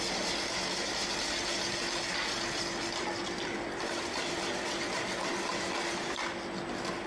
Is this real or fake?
real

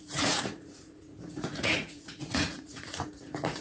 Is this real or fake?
fake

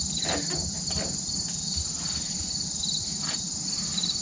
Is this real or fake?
real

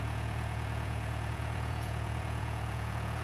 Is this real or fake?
fake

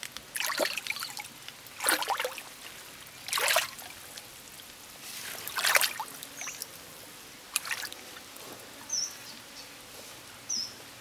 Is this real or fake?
real